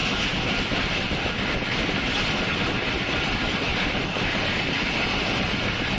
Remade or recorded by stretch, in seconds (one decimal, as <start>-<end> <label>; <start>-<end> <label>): 0.0-6.0 recorded